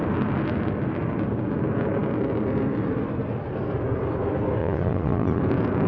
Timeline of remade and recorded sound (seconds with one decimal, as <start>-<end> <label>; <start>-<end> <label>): 0.0-4.6 recorded; 4.6-5.4 remade; 5.4-5.9 recorded